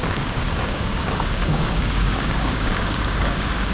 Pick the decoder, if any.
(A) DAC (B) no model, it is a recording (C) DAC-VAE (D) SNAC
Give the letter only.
A